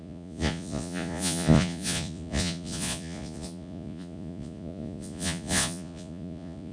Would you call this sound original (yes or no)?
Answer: no